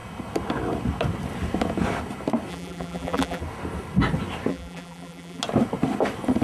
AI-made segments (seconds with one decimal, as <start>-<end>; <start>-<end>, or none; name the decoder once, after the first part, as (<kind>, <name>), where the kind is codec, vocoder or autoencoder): 2.5-3.4 (vocoder, BigVGAN v2); 4.5-5.4